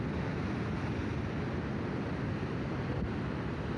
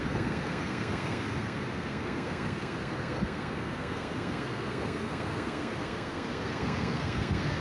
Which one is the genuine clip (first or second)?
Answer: first